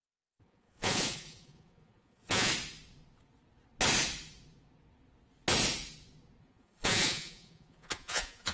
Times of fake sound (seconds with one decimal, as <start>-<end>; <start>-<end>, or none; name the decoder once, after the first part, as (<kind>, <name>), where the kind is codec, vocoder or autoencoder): 0.0-2.5 (vocoder, Vocos); 6.4-8.5

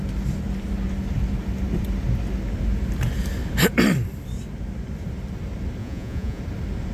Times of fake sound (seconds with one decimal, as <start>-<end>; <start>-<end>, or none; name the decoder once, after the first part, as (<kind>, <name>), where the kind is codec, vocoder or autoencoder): 5.8-6.4 (vocoder, Vocos)

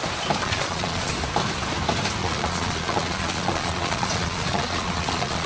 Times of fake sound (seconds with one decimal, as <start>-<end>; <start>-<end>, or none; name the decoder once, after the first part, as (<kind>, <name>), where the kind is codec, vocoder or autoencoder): 0.4-1.1 (vocoder, Vocos); 2.2-5.5

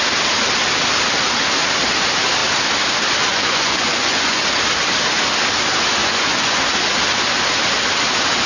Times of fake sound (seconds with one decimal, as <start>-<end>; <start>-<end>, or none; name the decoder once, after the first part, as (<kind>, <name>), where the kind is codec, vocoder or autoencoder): 3.3-4.4 (vocoder, Vocos); 6.0-6.6

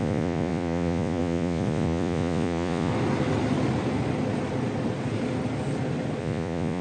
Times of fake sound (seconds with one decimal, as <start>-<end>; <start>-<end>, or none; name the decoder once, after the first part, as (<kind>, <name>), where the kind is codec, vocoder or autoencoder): 0.0-2.9 (vocoder, Vocos); 6.2-6.8

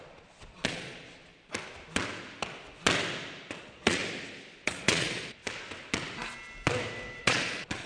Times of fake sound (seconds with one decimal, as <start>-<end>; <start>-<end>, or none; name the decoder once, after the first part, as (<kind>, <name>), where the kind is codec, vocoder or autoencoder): 0.0-1.3 (vocoder, Vocos); 3.6-4.0; 4.6-5.4; 7.2-7.9